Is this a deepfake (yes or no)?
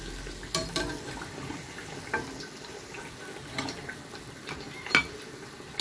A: no